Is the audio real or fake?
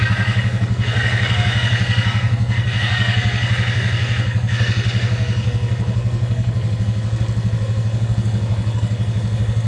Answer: fake